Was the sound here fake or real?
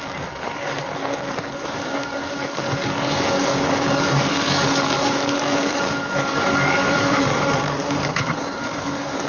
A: fake